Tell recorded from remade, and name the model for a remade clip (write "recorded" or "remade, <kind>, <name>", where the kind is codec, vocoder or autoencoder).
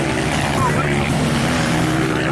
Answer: recorded